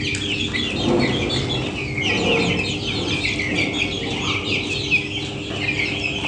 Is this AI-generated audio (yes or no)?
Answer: no